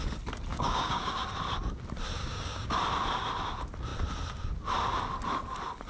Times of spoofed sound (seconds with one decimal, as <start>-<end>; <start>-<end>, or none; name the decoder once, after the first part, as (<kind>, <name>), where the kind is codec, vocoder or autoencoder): 0.5-1.1 (codec, DAC); 2.2-2.8